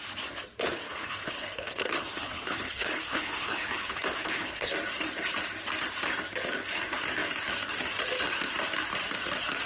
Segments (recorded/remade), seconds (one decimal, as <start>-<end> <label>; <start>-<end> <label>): 0.0-0.7 recorded; 0.7-4.7 remade; 4.7-9.7 recorded